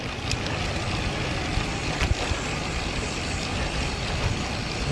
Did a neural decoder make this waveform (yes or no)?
no